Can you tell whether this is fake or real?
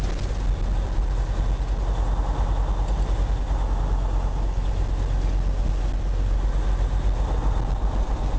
real